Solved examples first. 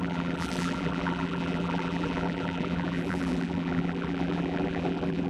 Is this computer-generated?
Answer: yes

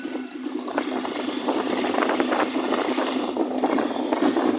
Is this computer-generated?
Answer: no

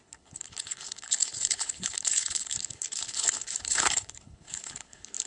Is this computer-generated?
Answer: yes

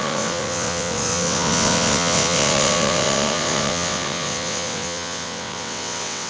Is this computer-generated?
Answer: yes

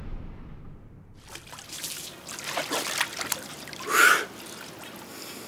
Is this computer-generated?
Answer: no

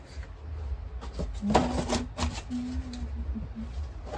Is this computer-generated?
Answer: no